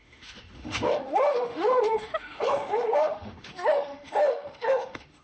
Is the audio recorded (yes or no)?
no